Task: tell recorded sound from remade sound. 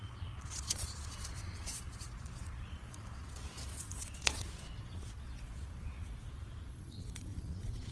remade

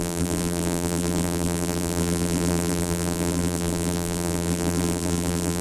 remade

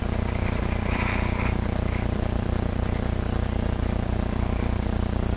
recorded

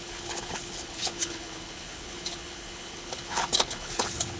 remade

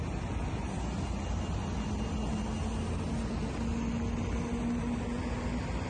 recorded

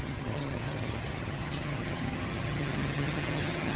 remade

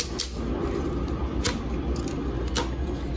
recorded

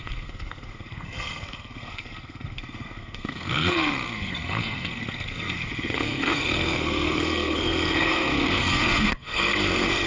remade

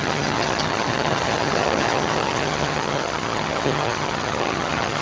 remade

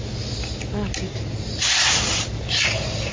recorded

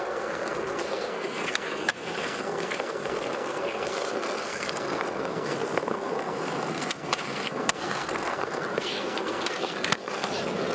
remade